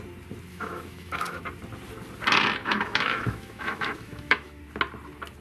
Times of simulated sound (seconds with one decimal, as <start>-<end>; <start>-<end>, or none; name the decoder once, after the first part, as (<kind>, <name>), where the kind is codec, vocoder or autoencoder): 0.5-1.4 (autoencoder, DAC-VAE); 2.6-4.6